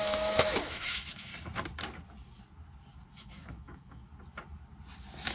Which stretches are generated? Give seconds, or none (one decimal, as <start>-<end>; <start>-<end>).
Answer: 0.0-1.3; 3.1-4.0